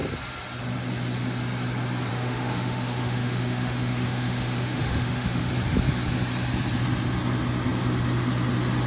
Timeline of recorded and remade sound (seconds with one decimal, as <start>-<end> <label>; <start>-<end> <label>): 0.0-2.1 recorded; 2.1-5.5 remade; 5.5-8.9 recorded